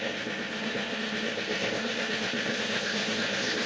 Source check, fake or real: fake